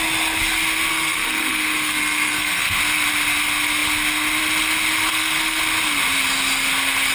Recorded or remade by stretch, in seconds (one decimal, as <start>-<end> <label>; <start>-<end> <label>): 0.0-0.9 recorded; 0.9-2.8 remade; 2.8-5.1 recorded; 5.1-5.6 remade; 5.6-7.1 recorded